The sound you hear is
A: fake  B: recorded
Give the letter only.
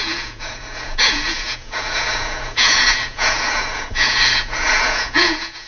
A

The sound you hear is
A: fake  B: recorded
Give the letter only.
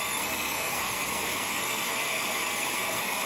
A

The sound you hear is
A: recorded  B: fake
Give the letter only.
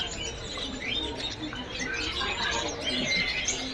A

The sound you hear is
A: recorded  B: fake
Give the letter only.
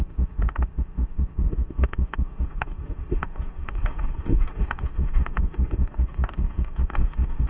B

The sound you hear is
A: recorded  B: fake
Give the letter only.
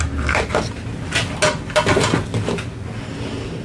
A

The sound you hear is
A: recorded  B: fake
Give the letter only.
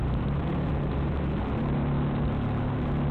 B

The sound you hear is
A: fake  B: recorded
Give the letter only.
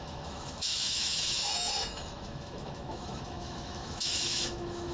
A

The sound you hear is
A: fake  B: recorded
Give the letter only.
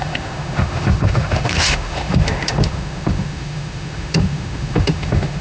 A